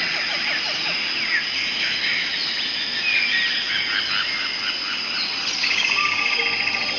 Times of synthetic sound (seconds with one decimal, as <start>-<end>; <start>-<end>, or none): 5.6-6.4